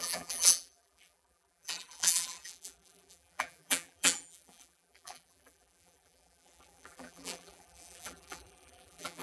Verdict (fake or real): fake